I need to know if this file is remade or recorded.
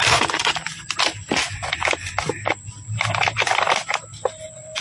recorded